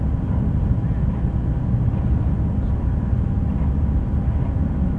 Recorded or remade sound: recorded